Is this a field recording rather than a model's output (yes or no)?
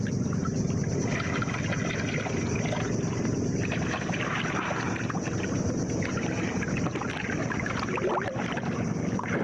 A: yes